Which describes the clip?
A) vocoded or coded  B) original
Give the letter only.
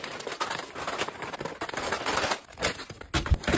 B